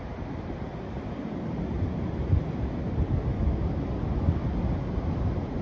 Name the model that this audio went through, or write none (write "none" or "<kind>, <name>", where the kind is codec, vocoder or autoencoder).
none